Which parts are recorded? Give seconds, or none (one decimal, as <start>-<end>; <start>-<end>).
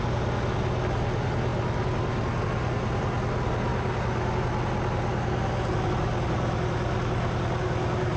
0.0-8.2